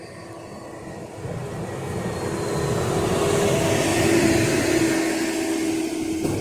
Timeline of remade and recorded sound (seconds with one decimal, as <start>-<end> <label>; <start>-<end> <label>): 0.0-3.9 recorded; 3.9-4.8 remade; 4.8-6.4 recorded